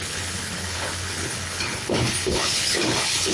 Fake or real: fake